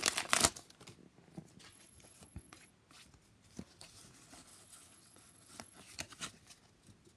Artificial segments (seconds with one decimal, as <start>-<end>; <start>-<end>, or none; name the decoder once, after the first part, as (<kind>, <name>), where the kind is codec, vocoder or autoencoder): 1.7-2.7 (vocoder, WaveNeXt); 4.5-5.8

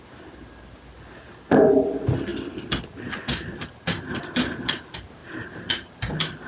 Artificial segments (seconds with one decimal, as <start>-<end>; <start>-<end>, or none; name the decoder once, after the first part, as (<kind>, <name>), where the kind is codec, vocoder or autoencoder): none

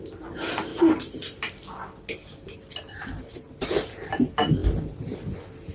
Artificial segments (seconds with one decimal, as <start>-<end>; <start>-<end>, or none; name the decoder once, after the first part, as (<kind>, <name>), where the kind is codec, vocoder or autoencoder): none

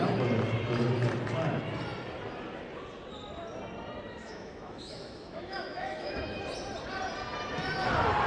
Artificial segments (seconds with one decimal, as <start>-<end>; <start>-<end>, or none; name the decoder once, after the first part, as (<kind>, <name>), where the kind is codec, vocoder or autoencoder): 4.2-6.4 (autoencoder, DAC-VAE)

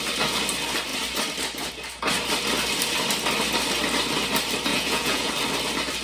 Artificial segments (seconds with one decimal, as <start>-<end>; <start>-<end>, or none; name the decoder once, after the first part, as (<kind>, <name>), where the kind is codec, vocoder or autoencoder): 4.7-5.3 (vocoder, Vocos)

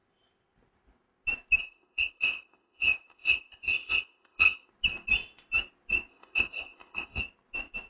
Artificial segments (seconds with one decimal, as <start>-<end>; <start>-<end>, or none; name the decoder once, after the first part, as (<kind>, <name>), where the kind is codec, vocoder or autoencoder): 1.6-4.7 (codec, ZipCodec); 6.1-7.2

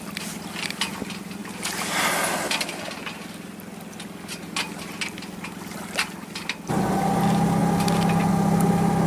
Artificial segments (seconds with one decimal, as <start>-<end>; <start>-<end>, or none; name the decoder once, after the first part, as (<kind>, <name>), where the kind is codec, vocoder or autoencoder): none